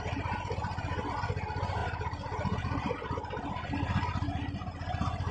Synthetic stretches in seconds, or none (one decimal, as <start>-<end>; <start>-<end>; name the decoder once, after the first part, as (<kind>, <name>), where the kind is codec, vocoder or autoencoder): none